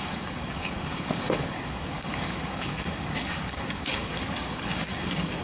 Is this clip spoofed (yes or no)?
yes